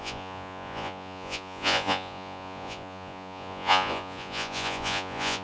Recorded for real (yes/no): no